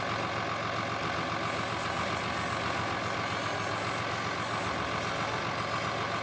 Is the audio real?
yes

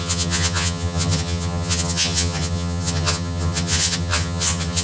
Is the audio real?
no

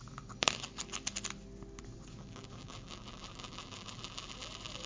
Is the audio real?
yes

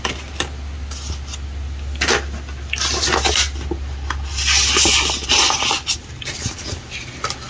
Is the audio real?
yes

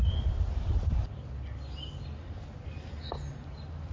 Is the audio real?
yes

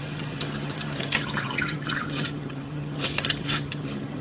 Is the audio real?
no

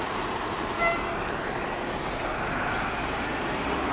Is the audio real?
yes